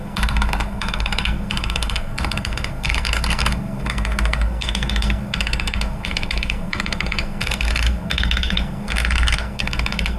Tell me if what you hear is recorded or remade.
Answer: remade